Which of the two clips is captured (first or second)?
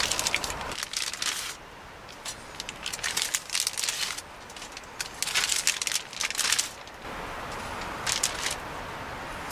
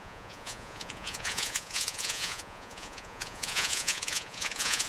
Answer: first